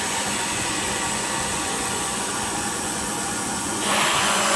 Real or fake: fake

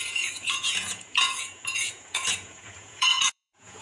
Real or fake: fake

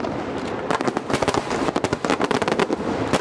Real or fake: real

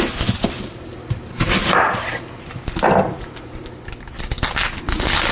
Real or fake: real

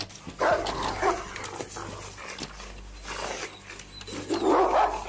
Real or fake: real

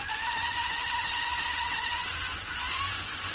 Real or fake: fake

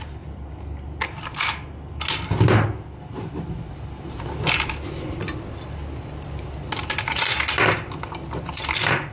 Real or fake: real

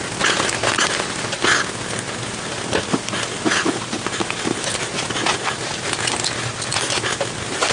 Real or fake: real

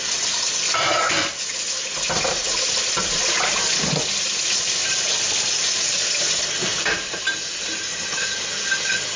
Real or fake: real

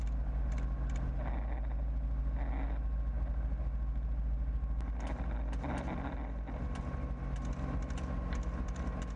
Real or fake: real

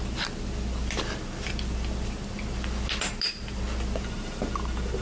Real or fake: real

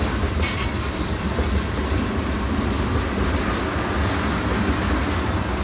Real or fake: real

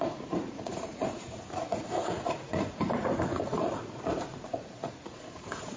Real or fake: fake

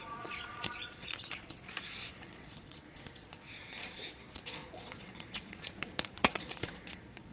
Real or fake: fake